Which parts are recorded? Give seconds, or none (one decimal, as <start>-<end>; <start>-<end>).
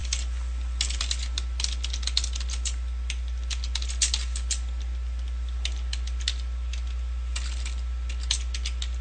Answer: 0.0-9.0